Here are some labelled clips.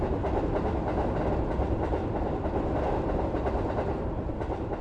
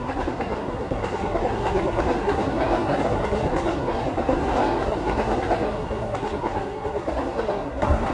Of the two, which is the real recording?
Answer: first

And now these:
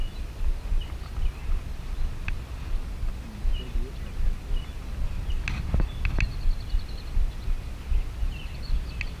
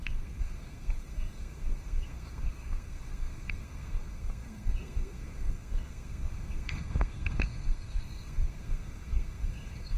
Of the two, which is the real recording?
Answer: first